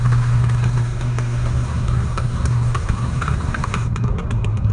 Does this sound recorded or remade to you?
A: remade